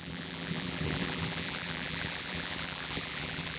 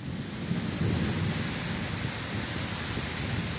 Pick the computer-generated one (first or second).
first